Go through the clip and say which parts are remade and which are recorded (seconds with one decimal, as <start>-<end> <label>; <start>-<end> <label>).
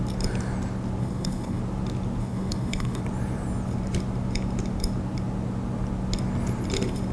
0.0-1.0 recorded; 1.0-1.6 remade; 1.6-2.2 recorded; 2.2-3.0 remade; 3.0-7.1 recorded